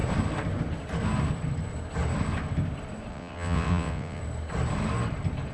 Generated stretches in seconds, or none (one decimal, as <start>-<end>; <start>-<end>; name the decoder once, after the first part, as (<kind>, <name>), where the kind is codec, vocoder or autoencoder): 3.1-4.2 (vocoder, WaveNeXt)